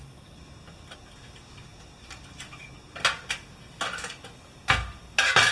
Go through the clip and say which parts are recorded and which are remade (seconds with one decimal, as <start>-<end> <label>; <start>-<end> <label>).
0.0-5.5 recorded